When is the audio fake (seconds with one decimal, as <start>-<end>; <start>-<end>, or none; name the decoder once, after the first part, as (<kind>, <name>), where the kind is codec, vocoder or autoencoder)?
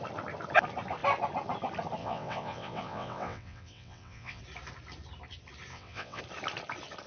2.0-4.4 (vocoder, WaveNeXt); 5.7-6.2